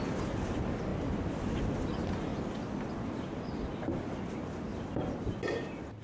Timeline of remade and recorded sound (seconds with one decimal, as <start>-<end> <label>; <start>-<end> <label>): 0.0-0.9 recorded; 0.9-1.6 remade; 1.6-6.0 recorded